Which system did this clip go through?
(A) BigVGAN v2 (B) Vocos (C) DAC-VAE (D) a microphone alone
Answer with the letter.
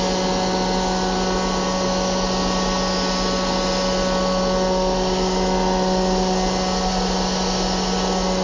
D